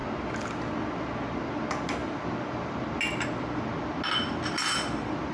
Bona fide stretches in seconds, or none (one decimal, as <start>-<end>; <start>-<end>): 0.0-5.3